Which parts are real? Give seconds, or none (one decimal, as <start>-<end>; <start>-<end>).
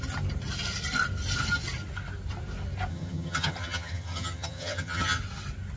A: 0.0-2.9; 5.2-5.8